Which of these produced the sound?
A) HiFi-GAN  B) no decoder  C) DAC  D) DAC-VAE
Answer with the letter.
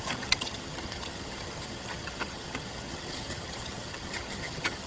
A